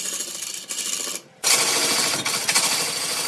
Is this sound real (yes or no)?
yes